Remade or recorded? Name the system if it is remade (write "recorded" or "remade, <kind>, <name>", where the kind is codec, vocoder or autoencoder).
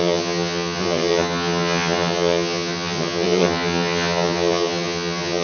remade, vocoder, HiFi-GAN